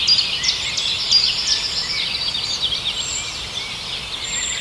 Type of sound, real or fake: real